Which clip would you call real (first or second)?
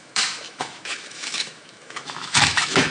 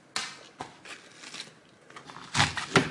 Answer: second